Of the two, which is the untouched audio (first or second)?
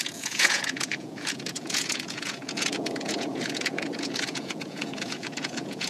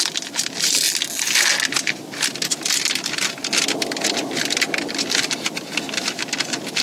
second